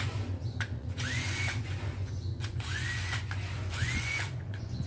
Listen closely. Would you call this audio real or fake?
fake